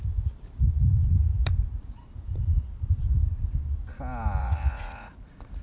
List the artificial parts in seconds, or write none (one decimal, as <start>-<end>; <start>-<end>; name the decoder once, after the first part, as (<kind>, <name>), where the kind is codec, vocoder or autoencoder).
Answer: 4.4-5.1 (vocoder, Vocos)